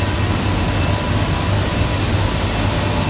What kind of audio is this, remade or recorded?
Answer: recorded